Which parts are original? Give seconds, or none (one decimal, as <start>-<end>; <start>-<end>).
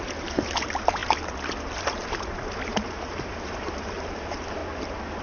1.0-1.8; 4.6-5.2